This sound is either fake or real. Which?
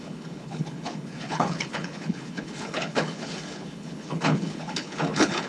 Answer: fake